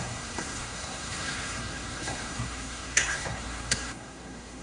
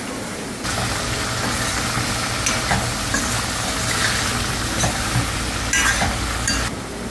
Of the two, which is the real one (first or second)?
second